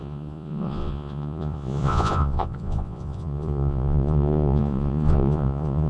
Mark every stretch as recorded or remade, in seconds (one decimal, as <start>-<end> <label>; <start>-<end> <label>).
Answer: 0.0-5.9 remade